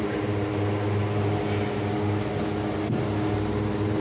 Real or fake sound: real